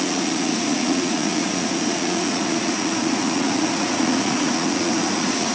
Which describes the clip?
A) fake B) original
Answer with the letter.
A